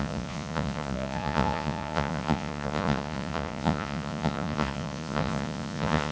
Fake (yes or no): yes